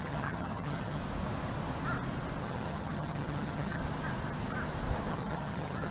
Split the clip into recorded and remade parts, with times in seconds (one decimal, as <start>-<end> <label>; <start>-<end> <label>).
0.0-1.0 remade; 1.0-2.4 recorded; 2.4-3.8 remade; 3.8-5.1 recorded; 5.1-5.9 remade